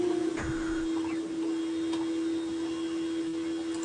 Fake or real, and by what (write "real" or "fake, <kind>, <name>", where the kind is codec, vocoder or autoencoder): real